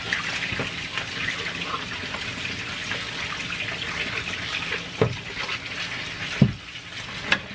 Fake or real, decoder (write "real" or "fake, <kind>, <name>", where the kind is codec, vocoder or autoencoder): real